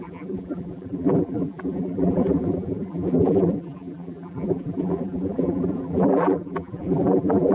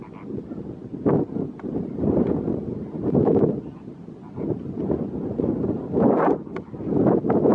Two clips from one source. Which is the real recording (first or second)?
second